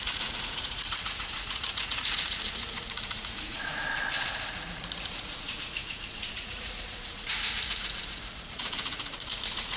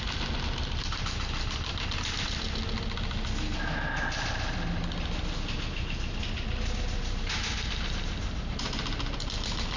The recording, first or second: second